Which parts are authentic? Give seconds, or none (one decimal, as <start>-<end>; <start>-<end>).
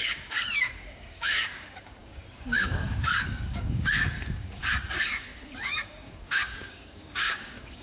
none